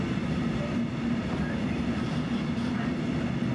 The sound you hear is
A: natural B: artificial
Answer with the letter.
A